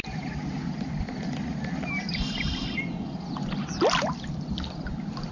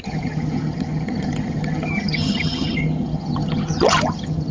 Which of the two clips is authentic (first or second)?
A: first